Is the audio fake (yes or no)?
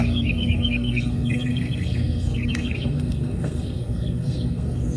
yes